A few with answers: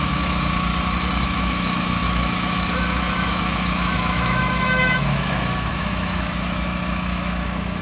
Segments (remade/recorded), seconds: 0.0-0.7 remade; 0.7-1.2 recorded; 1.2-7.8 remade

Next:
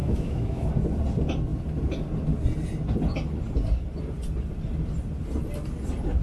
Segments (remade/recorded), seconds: 0.0-0.7 remade; 0.7-6.2 recorded

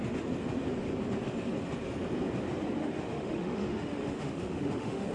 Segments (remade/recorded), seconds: 0.0-2.8 recorded; 2.8-5.1 remade

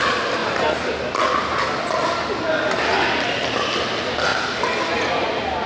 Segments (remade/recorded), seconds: 0.0-5.7 recorded

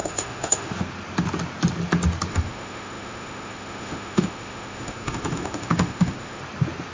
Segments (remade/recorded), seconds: 0.0-0.7 remade; 0.7-2.3 recorded; 2.3-6.4 remade; 6.4-6.9 recorded

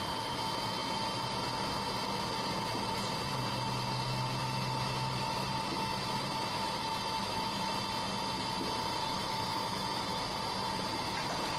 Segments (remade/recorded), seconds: 0.0-4.4 recorded; 4.4-6.8 remade; 6.8-7.2 recorded; 7.2-7.7 remade; 7.7-9.0 recorded; 9.0-10.2 remade; 10.2-11.6 recorded